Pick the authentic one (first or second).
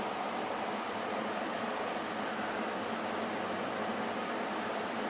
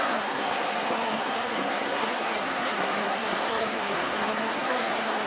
first